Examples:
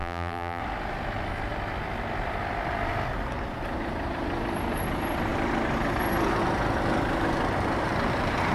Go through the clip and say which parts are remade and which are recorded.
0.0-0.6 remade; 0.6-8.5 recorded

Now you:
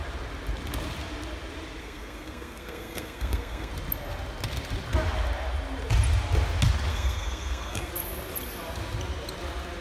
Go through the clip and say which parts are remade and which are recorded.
0.0-1.8 recorded; 1.8-3.7 remade; 3.7-6.9 recorded; 6.9-7.9 remade; 7.9-9.8 recorded

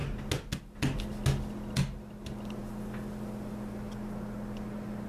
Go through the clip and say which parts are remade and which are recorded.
0.0-5.1 recorded

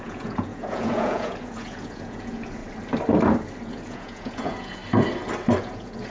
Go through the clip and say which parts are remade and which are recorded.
0.0-2.6 remade; 2.6-3.7 recorded; 3.7-4.8 remade; 4.8-5.6 recorded; 5.6-6.1 remade

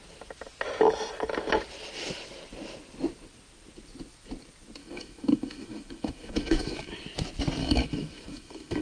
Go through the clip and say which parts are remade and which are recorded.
0.0-4.8 recorded; 4.8-6.9 remade; 6.9-7.6 recorded; 7.6-8.8 remade

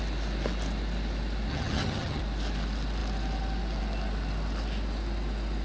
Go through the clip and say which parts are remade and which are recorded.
0.0-1.5 recorded; 1.5-2.2 remade; 2.2-5.6 recorded